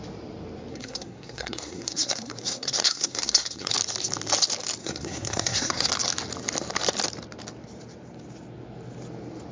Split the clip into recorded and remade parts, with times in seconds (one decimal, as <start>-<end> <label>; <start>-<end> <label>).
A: 0.0-0.7 recorded; 0.7-3.7 remade; 3.7-4.8 recorded; 4.8-5.9 remade; 5.9-9.5 recorded